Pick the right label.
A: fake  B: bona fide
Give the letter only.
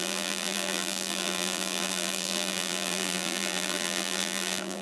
A